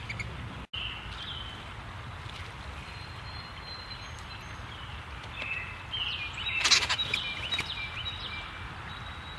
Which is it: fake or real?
real